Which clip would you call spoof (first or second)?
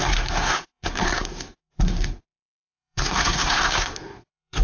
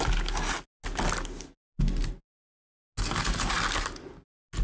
first